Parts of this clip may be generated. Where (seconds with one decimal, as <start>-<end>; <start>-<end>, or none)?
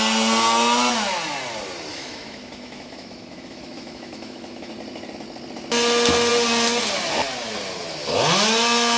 1.9-4.7